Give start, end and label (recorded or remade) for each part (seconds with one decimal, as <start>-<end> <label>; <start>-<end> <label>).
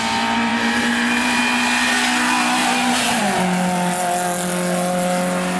0.0-0.5 recorded; 0.5-1.4 remade; 1.4-2.6 recorded; 2.6-3.2 remade; 3.2-5.6 recorded